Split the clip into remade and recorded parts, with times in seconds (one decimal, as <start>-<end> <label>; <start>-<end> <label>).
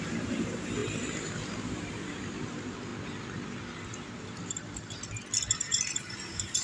0.0-2.9 remade; 2.9-5.6 recorded; 5.6-6.6 remade